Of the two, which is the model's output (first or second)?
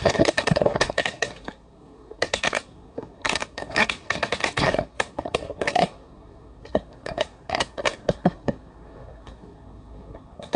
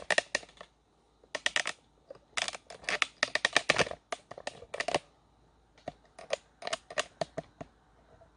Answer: first